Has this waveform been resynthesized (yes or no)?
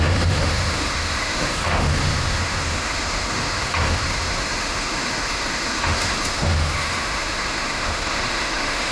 yes